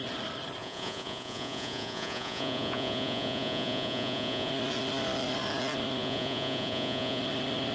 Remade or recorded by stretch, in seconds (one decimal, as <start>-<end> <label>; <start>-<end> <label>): 0.0-0.6 recorded; 0.6-4.5 remade; 4.5-6.0 recorded; 6.0-7.2 remade; 7.2-7.7 recorded